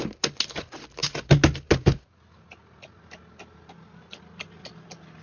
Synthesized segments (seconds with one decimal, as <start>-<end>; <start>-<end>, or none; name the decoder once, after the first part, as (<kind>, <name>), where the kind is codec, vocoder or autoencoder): none